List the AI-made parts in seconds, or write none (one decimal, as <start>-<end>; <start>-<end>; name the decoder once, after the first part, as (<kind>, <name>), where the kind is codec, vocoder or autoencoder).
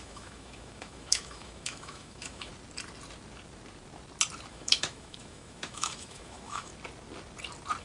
0.0-2.5 (autoencoder, DAC-VAE); 4.5-6.7